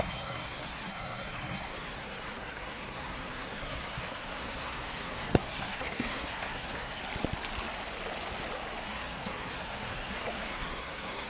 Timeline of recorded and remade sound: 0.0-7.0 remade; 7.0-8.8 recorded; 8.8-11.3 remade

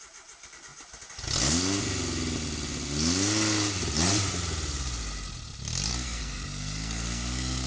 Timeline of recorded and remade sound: 0.0-5.9 recorded; 5.9-7.7 remade

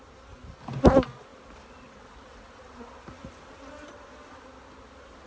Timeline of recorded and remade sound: 0.0-5.3 recorded

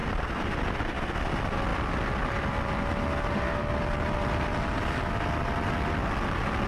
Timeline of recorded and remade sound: 0.0-0.5 remade; 0.5-1.7 recorded; 1.7-5.7 remade; 5.7-6.7 recorded